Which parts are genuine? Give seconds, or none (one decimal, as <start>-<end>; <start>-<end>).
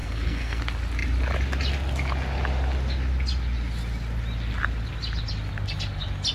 0.6-6.3